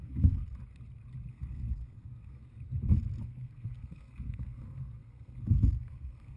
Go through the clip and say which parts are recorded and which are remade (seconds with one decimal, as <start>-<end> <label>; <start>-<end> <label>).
0.0-0.4 remade; 0.4-1.3 recorded; 1.3-2.4 remade; 2.4-3.2 recorded; 3.2-6.4 remade